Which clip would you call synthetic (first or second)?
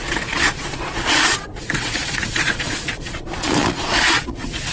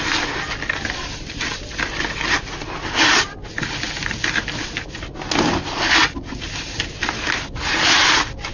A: first